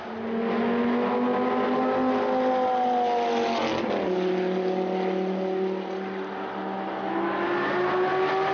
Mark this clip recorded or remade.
recorded